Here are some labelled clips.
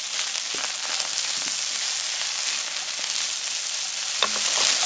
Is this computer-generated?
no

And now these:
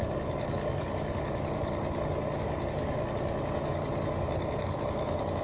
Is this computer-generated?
yes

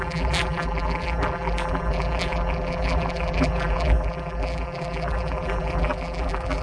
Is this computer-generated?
yes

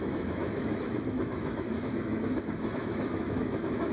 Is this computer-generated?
yes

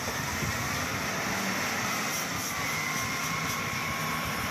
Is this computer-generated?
no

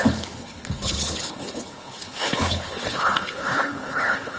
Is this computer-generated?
yes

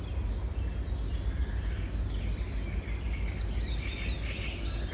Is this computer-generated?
no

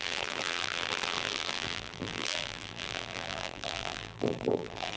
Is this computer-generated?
yes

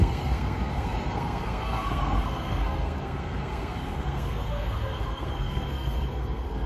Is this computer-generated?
yes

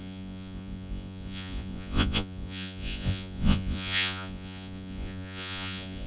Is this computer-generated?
yes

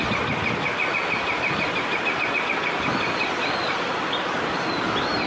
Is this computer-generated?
no